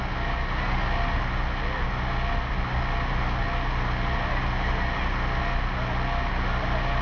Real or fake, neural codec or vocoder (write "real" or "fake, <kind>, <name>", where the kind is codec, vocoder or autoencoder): real